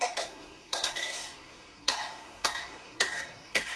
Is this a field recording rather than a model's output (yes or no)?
no